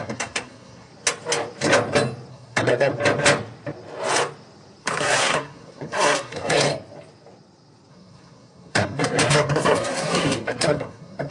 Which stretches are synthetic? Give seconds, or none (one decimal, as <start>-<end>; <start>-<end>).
0.0-0.9; 2.3-2.9; 4.8-6.7; 7.9-11.3